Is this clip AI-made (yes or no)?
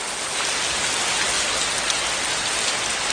no